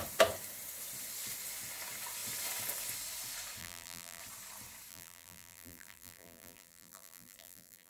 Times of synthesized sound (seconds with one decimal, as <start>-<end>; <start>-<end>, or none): 3.6-4.2; 4.9-7.9